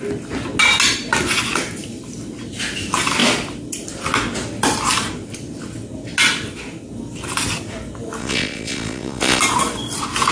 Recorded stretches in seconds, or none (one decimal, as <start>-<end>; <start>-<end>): 0.0-8.2; 9.4-10.3